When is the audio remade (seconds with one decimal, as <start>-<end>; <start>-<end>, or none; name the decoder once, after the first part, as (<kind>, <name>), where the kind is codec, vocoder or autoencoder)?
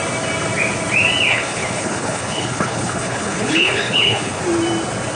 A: 1.3-4.4 (codec, HILCodec)